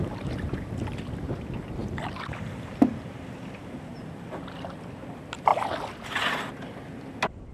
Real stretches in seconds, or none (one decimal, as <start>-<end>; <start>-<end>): 0.0-7.5